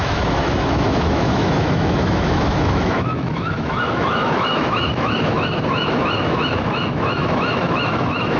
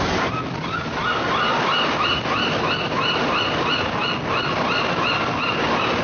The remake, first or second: first